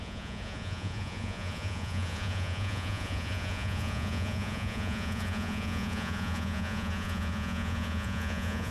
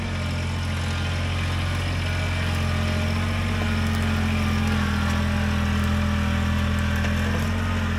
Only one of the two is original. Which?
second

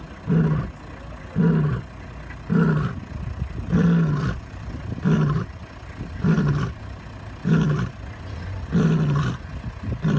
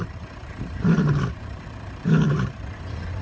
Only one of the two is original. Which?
first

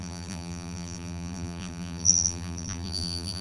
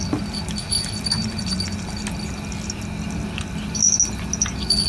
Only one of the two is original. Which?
second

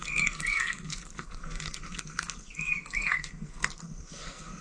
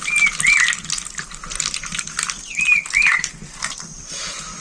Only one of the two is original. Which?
second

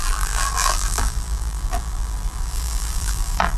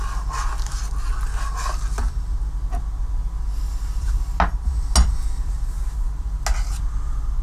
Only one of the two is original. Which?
second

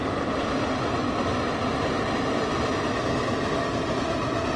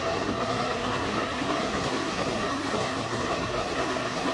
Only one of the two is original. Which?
first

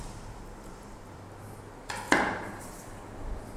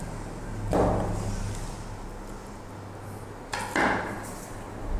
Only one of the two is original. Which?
second